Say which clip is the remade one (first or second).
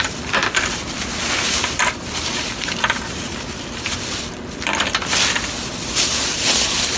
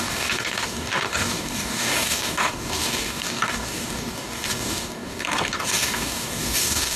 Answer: second